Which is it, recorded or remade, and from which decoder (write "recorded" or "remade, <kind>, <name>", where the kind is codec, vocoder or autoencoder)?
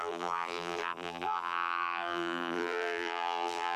remade, vocoder, BigVGAN v2